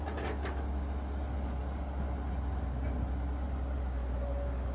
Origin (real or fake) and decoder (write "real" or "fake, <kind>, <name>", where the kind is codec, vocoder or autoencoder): real